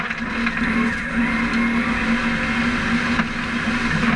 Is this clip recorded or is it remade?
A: recorded